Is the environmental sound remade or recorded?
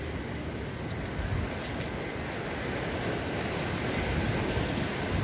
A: recorded